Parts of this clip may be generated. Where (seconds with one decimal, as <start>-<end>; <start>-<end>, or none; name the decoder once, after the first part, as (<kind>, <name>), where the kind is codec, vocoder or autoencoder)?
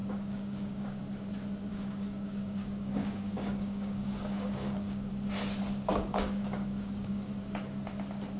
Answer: 0.0-1.0 (codec, DAC); 1.7-5.1; 5.9-7.3